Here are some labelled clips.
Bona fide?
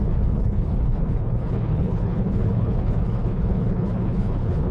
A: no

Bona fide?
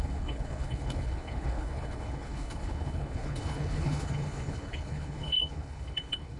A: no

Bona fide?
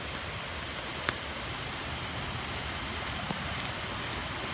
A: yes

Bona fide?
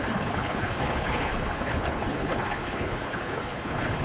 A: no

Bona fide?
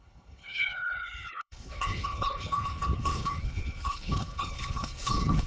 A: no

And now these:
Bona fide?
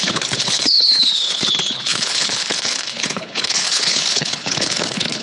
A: no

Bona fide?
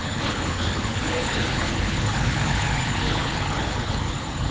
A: no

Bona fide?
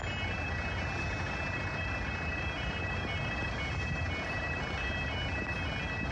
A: yes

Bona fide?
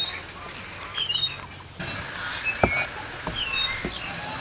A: yes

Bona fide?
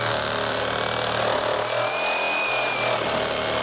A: yes